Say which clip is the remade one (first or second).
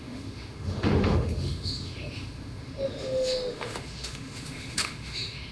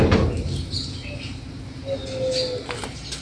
first